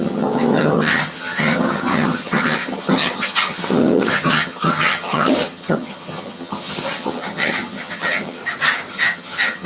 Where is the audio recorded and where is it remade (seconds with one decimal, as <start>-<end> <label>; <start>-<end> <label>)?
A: 0.0-8.4 remade; 8.4-8.9 recorded; 8.9-9.7 remade